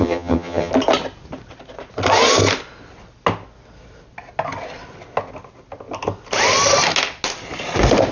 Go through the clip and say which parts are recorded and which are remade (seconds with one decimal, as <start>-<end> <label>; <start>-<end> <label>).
0.0-0.7 remade; 0.7-8.1 recorded